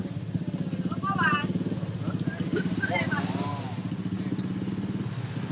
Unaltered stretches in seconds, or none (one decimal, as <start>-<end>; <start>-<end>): 0.0-5.5